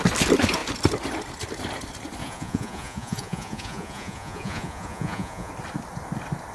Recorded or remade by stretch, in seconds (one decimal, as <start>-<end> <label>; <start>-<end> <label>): 0.0-2.2 recorded; 2.2-5.5 remade; 5.5-6.5 recorded

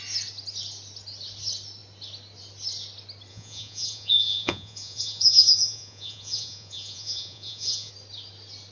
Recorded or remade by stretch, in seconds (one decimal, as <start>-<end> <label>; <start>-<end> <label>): 0.0-3.3 recorded; 3.3-7.9 remade; 7.9-8.7 recorded

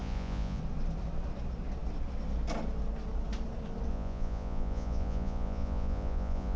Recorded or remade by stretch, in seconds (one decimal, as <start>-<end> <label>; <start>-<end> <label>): 0.0-0.6 remade; 0.6-3.9 recorded; 3.9-6.6 remade

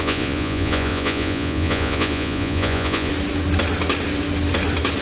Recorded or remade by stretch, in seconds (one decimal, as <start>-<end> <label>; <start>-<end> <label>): 0.0-3.1 remade; 3.1-5.0 recorded